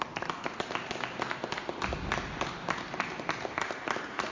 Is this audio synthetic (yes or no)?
no